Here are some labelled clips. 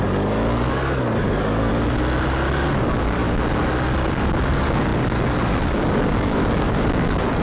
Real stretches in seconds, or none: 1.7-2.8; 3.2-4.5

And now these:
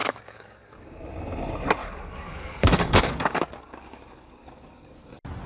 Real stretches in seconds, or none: 1.0-1.8; 5.1-5.5

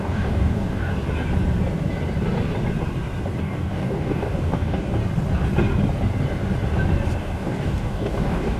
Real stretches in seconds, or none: 0.9-3.4; 5.0-7.2

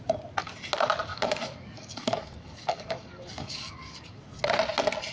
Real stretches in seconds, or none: 0.0-1.1; 4.2-5.1

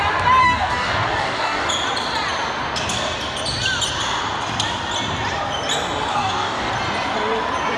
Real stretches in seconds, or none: 0.0-0.4; 1.7-6.1; 6.7-7.8

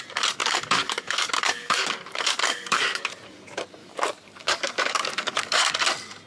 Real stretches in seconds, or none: 0.0-0.4; 3.1-3.8; 5.7-6.3